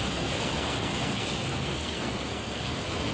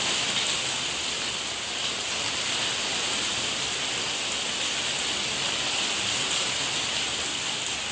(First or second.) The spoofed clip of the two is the first